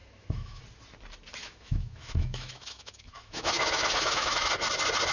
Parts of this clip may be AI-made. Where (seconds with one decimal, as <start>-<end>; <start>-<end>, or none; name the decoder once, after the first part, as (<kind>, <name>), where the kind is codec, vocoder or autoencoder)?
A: 0.0-0.6 (autoencoder, DAC-VAE); 1.4-4.5